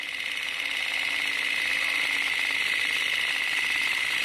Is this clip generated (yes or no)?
no